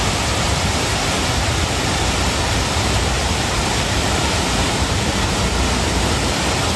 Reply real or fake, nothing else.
fake